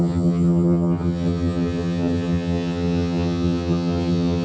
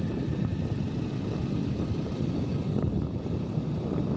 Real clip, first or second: second